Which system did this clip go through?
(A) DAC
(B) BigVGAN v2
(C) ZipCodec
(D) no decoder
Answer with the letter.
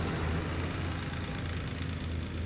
D